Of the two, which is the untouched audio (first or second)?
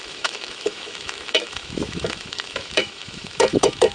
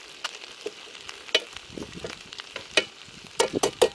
second